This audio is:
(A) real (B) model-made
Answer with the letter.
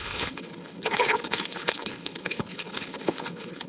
B